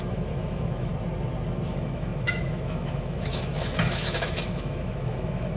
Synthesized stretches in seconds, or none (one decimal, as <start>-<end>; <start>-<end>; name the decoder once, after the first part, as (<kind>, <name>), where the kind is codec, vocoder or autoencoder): 0.0-0.9 (autoencoder, DAC-VAE); 1.7-5.6